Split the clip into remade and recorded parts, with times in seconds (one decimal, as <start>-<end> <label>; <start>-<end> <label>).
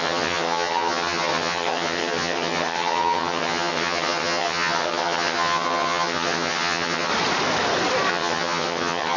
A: 0.0-7.1 remade; 7.1-8.1 recorded; 8.1-9.2 remade